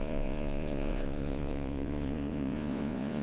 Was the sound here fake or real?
fake